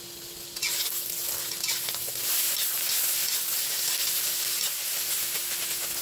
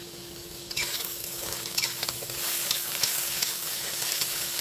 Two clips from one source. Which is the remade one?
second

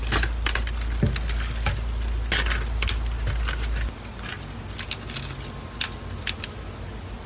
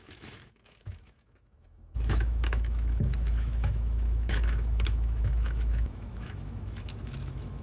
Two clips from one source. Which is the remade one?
second